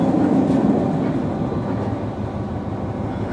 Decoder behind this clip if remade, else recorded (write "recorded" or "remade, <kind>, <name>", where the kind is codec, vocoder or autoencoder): recorded